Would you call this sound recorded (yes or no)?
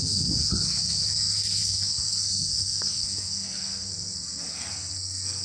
no